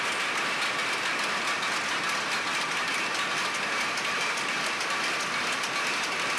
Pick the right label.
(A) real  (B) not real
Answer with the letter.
A